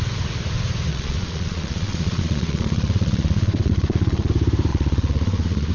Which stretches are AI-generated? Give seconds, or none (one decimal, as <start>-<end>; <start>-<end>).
0.9-4.3; 4.7-5.7

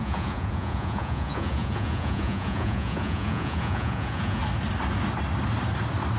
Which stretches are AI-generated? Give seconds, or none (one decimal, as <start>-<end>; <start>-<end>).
0.0-4.4